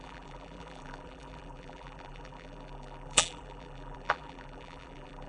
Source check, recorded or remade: remade